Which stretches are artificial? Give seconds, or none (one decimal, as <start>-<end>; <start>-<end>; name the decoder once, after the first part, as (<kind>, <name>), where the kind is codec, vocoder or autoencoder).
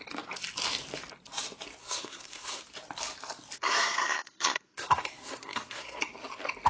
1.8-2.6 (codec, SNAC); 3.6-6.0